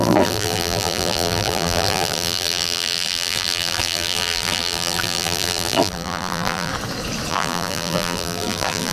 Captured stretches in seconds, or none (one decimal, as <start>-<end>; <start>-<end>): 6.7-7.3